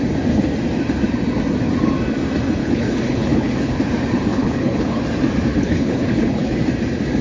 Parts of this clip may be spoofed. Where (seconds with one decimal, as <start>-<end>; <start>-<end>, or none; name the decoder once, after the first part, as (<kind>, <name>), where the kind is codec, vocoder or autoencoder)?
2.6-3.8 (codec, HILCodec); 4.3-5.0; 5.5-6.5